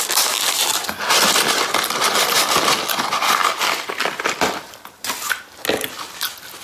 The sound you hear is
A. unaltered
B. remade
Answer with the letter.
A